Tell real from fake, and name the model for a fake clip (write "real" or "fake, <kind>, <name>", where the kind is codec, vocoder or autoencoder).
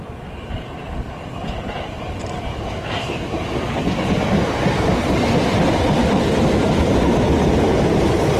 fake, vocoder, BigVGAN v2